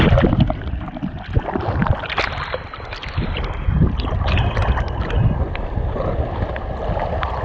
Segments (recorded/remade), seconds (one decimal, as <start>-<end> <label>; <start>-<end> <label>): 0.0-7.4 recorded